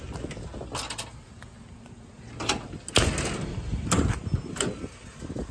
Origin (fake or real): real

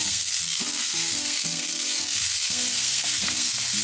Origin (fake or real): fake